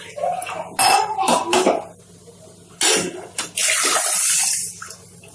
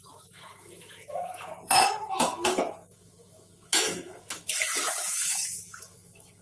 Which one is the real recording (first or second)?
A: first